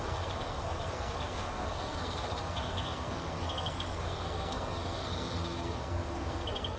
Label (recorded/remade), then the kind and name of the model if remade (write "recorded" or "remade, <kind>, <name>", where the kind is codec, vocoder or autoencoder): remade, codec, SNAC